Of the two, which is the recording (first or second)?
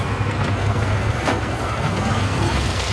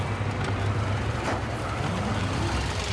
second